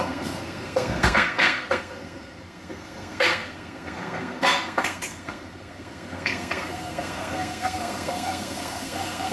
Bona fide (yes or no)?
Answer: no